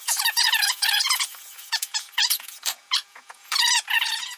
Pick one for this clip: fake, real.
fake